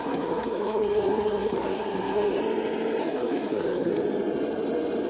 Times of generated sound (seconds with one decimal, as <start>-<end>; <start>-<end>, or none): 0.0-2.4; 3.0-3.9